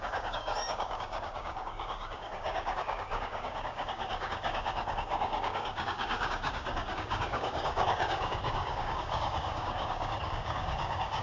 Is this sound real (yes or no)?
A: no